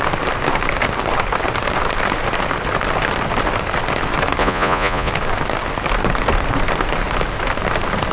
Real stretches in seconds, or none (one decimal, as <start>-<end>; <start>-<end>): 0.0-4.4; 5.1-8.1